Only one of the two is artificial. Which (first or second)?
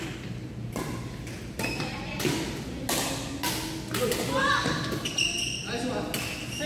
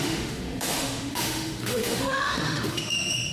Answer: second